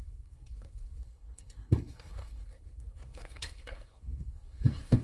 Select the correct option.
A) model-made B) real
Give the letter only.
A